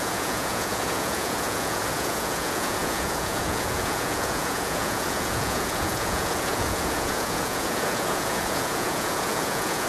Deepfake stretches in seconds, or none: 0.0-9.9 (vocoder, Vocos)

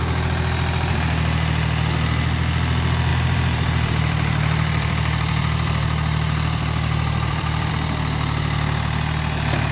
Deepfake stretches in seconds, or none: 3.1-7.7 (vocoder, BigVGAN v2)

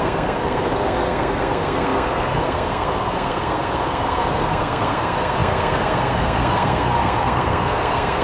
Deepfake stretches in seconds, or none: 0.0-8.2 (codec, SNAC)

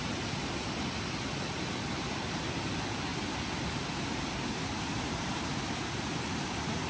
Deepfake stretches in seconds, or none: none

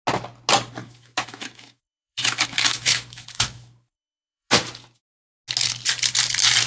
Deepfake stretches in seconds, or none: 0.8-4.5 (autoencoder, DAC-VAE)